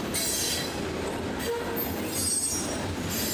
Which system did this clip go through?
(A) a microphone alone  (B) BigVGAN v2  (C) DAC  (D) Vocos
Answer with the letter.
A